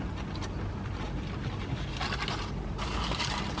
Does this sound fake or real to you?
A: real